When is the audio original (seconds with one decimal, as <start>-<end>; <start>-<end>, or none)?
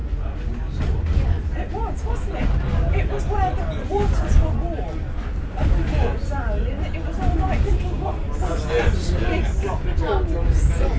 0.0-11.0